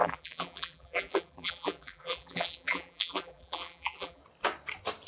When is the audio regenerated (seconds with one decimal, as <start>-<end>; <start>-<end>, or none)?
0.0-4.2